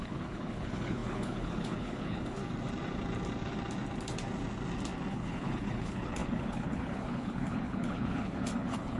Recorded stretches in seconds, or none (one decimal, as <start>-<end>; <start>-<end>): 2.4-5.1